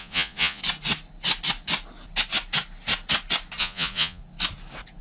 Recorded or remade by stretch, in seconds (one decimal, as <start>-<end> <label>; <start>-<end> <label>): 0.0-0.6 remade; 0.6-3.6 recorded; 3.6-4.2 remade; 4.2-5.0 recorded